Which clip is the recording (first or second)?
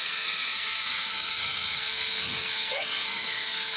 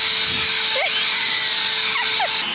second